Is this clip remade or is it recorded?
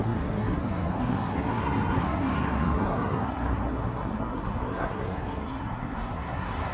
remade